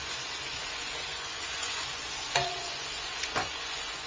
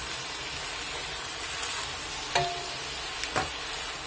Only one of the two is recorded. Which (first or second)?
second